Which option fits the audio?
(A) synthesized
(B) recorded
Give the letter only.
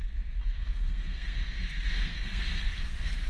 A